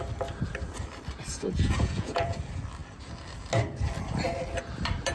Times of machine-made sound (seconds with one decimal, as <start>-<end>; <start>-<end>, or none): 1.3-2.4